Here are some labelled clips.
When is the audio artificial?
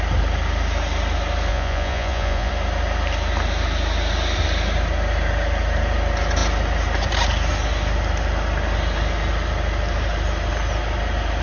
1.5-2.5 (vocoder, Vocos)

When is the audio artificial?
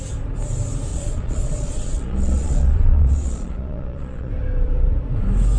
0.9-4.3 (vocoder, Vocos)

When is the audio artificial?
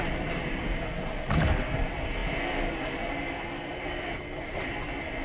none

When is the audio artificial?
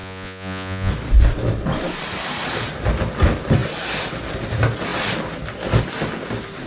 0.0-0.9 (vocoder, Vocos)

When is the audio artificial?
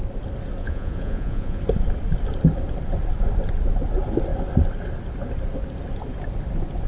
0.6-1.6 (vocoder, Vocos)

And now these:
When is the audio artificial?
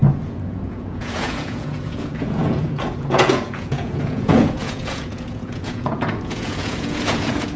0.0-7.6 (vocoder, Vocos)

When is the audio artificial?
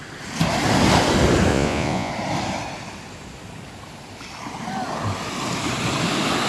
1.5-2.1 (vocoder, Vocos)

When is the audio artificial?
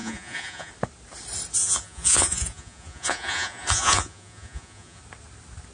0.0-0.7 (vocoder, Vocos); 1.6-5.0